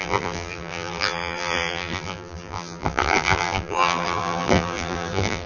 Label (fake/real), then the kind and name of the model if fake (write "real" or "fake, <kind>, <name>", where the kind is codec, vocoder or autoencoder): fake, vocoder, BigVGAN v2